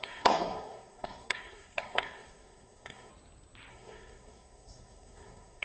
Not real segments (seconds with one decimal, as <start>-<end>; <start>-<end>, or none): 0.0-3.1; 3.7-5.6